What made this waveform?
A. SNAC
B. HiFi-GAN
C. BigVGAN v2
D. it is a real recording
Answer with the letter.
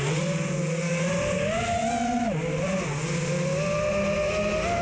D